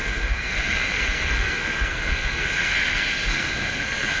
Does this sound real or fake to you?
fake